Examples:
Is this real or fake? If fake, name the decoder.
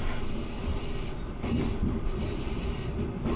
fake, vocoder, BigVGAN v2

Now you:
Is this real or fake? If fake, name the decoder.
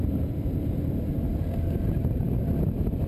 real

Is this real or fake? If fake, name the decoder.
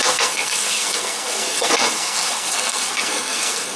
fake, codec, SNAC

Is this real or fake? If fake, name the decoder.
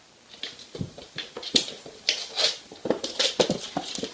real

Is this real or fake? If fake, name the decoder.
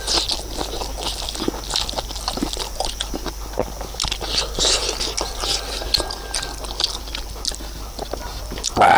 real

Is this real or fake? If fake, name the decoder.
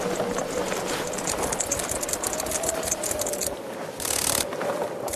fake, vocoder, BigVGAN v2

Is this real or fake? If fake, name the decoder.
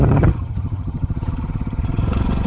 fake, vocoder, HiFi-GAN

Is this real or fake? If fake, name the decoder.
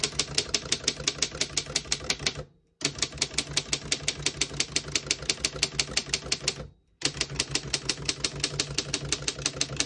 real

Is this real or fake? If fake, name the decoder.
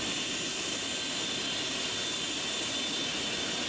real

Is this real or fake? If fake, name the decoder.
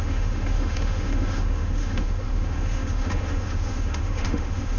fake, autoencoder, DAC-VAE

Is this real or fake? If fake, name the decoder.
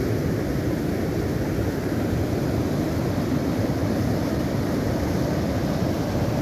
real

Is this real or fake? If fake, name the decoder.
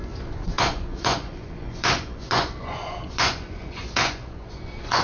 fake, vocoder, Vocos